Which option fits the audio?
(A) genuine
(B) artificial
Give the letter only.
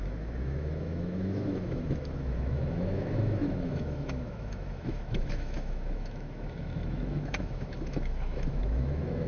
B